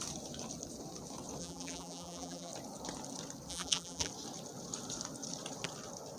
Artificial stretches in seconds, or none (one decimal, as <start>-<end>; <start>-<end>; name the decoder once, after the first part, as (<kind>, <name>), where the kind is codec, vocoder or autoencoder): 1.4-2.5 (vocoder, BigVGAN v2); 3.5-4.1